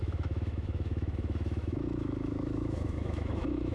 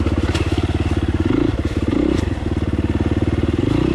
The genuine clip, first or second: second